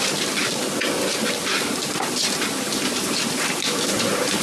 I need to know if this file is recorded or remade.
recorded